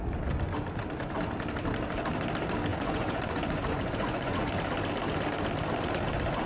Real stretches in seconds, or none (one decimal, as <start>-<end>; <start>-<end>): 0.0-2.7; 4.5-6.5

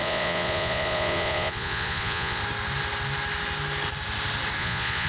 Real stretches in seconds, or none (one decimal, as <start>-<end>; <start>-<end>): 2.4-4.6

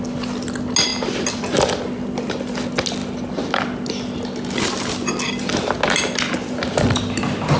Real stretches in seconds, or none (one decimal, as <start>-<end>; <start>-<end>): 0.0-7.6

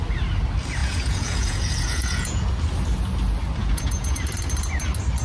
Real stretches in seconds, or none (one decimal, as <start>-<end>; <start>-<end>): 0.0-0.8; 2.6-3.6; 4.2-5.2

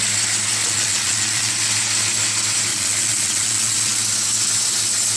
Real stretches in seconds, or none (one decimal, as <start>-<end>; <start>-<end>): 0.0-0.6; 1.5-2.7; 4.0-5.2

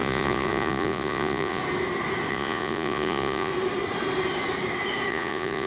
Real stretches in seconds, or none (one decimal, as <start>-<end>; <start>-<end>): 1.6-2.3; 3.5-5.1